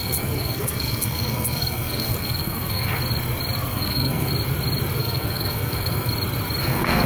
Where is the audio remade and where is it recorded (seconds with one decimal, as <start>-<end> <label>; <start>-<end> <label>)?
0.0-3.0 remade; 3.0-3.7 recorded; 3.7-4.3 remade; 4.3-5.0 recorded; 5.0-6.1 remade; 6.1-6.6 recorded; 6.6-7.1 remade